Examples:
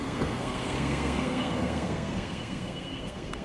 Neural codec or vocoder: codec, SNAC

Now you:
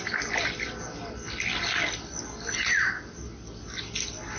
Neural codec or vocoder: none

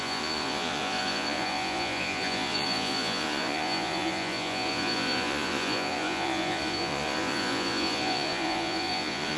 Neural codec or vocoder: vocoder, Vocos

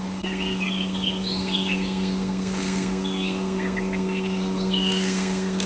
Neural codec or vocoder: codec, SNAC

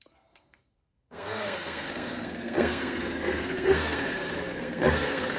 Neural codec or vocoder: codec, SNAC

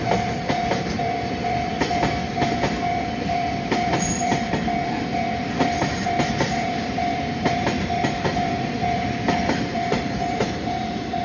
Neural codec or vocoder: vocoder, BigVGAN v2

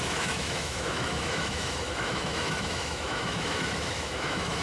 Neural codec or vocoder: autoencoder, DAC-VAE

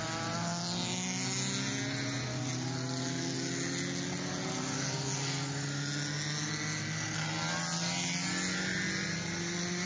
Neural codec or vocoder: none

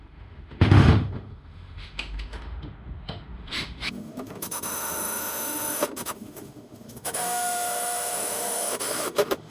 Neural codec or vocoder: autoencoder, DAC-VAE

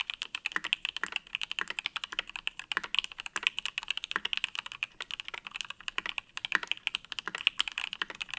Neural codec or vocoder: none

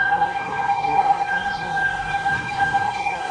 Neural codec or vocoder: codec, SNAC